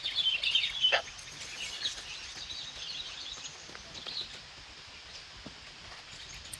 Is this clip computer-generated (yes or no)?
no